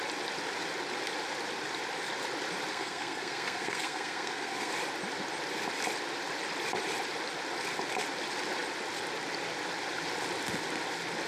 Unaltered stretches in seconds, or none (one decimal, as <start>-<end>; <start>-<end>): 0.0-2.7; 4.7-11.3